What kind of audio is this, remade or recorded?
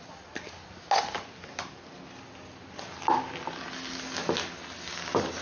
recorded